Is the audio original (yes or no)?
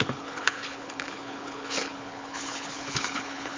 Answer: no